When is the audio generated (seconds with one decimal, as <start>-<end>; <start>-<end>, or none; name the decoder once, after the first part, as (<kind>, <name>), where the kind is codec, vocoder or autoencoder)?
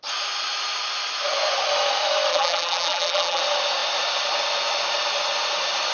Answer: 2.3-3.4 (vocoder, BigVGAN v2)